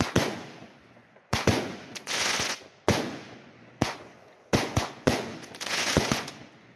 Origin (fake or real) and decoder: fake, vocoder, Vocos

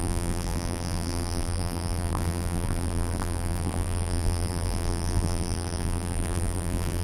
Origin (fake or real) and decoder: fake, vocoder, BigVGAN v2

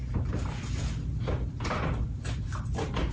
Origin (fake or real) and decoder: fake, vocoder, BigVGAN v2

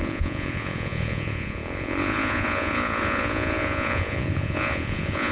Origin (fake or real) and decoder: fake, vocoder, Vocos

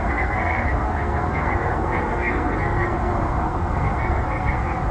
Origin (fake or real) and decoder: fake, codec, SNAC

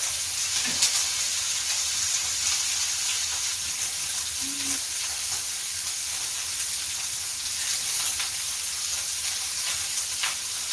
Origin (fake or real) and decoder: real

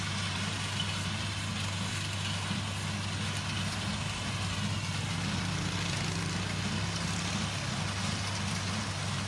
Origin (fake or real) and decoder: real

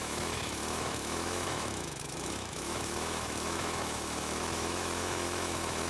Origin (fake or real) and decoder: fake, autoencoder, DAC-VAE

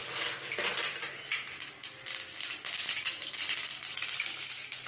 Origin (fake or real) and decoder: real